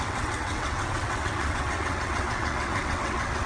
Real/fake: fake